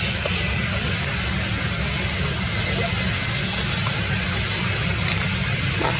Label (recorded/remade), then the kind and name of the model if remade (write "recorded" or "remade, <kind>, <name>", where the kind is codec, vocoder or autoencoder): recorded